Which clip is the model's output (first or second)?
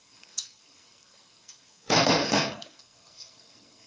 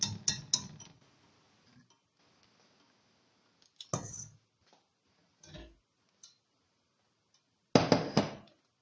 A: first